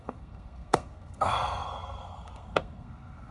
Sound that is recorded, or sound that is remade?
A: remade